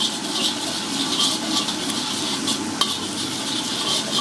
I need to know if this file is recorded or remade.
recorded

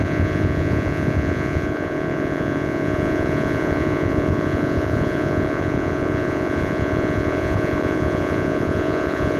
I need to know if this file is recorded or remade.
remade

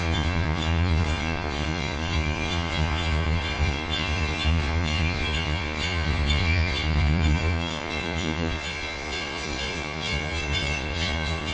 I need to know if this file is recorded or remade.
remade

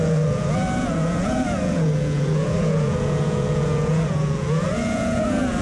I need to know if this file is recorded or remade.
remade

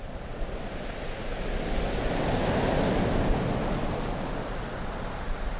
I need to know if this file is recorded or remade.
recorded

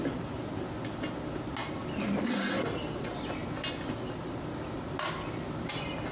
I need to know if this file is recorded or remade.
recorded